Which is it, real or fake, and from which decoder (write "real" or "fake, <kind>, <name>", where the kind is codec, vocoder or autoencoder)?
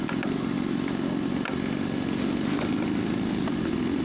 real